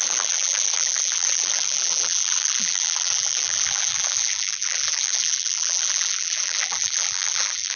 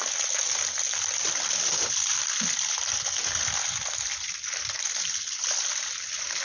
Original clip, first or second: second